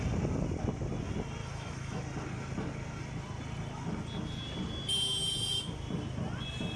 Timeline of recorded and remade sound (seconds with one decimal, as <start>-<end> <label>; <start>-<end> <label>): 0.0-1.4 recorded; 1.4-2.0 remade; 2.0-6.8 recorded